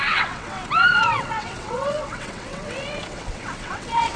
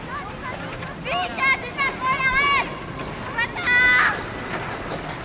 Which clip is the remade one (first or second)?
first